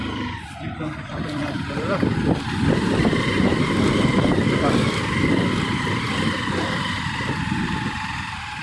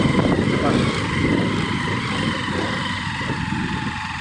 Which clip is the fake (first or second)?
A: first